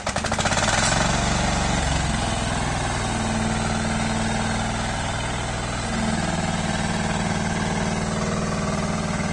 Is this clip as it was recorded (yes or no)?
yes